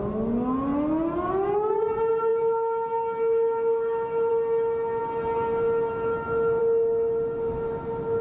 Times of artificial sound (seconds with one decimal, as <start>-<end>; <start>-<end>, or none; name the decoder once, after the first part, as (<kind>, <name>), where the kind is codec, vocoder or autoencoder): 2.3-4.3 (autoencoder, DAC-VAE)